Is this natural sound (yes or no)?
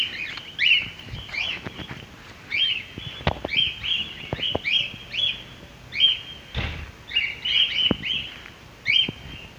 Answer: yes